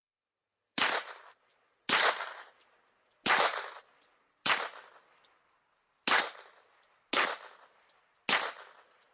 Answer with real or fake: real